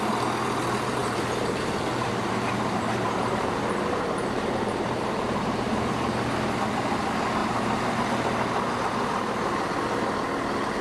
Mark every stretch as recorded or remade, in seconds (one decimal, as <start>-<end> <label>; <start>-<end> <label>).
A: 0.0-1.0 recorded; 1.0-5.6 remade; 5.6-7.4 recorded; 7.4-8.0 remade; 8.0-10.8 recorded